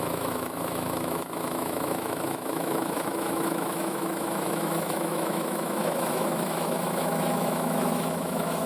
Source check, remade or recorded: remade